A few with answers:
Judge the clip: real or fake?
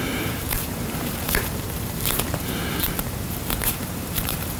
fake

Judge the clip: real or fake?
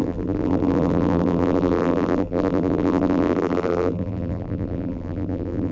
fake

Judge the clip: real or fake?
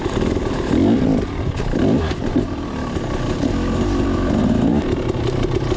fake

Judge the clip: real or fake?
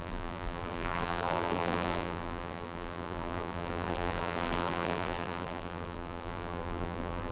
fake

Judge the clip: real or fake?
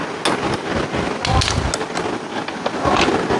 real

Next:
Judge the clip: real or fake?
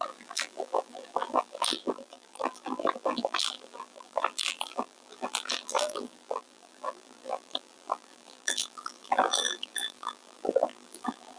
fake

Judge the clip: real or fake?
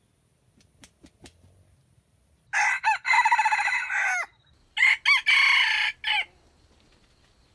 real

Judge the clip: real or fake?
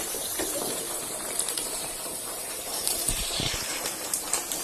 fake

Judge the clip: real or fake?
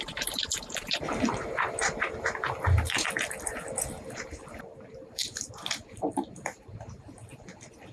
fake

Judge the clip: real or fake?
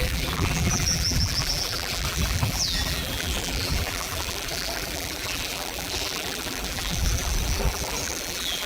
fake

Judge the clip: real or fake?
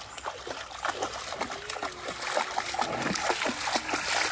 real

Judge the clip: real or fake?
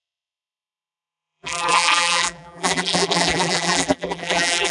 fake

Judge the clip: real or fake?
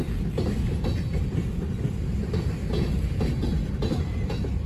real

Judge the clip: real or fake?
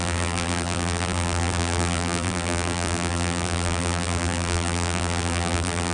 fake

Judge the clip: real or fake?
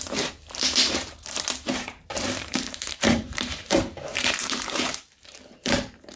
fake